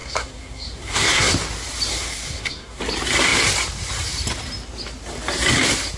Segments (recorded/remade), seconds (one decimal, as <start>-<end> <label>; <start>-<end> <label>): 0.0-1.3 remade; 1.3-1.9 recorded; 1.9-2.8 remade; 2.8-6.0 recorded